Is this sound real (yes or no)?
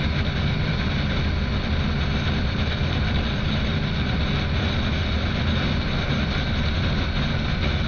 yes